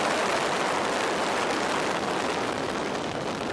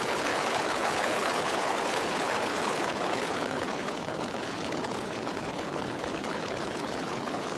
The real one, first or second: first